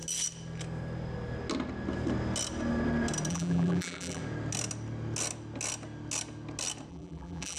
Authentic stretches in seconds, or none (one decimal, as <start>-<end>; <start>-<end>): 0.0-3.3; 4.2-6.9